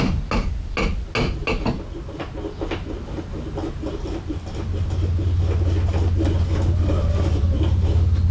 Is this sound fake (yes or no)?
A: no